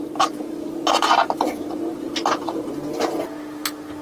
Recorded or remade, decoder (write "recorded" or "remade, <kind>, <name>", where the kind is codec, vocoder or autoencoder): recorded